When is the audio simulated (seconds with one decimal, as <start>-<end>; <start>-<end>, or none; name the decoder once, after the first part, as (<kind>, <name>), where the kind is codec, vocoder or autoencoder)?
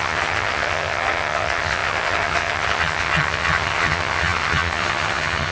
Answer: 0.0-5.5 (vocoder, HiFi-GAN)